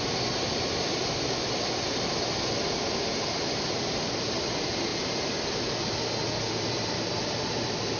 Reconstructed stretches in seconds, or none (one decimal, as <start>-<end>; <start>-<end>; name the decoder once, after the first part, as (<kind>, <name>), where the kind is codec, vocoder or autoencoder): 0.0-0.5 (vocoder, BigVGAN v2); 2.9-4.9; 6.5-8.0